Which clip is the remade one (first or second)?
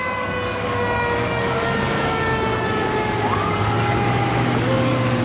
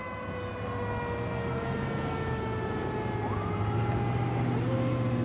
first